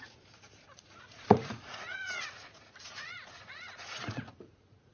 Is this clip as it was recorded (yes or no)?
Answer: no